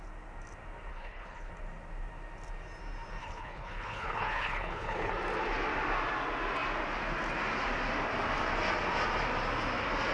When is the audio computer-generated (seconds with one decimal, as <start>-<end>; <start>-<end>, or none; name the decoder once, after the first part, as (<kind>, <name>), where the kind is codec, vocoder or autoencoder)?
0.9-1.5 (codec, HILCodec); 3.2-5.1